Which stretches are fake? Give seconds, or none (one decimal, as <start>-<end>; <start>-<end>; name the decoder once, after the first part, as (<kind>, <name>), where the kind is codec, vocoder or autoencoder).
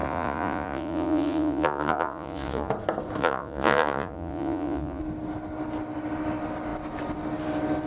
0.0-2.7 (vocoder, Vocos); 3.2-5.0